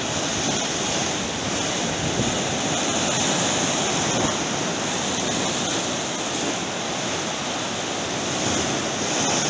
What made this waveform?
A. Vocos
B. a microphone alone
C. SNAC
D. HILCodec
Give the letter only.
B